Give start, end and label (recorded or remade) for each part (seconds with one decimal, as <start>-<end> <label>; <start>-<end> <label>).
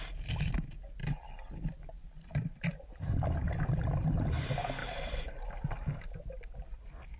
0.0-7.2 recorded